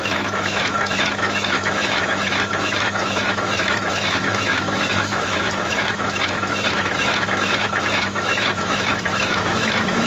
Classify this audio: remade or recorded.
remade